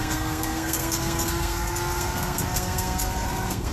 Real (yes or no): no